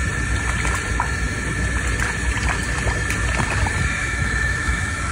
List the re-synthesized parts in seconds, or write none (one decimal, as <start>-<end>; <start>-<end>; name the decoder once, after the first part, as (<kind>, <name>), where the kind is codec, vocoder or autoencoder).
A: 4.0-5.1 (autoencoder, DAC-VAE)